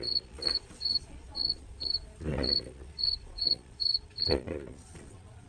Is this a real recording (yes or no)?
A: no